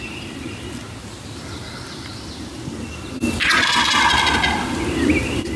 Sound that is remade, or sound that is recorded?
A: recorded